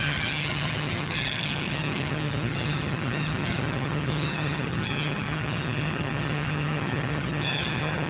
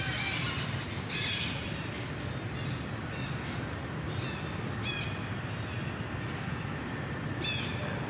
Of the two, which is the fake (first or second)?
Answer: first